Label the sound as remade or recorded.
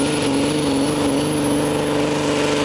recorded